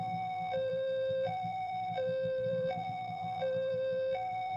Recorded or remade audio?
remade